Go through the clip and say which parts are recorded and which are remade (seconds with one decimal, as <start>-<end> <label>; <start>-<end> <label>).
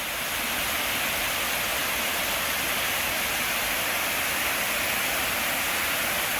0.0-6.4 recorded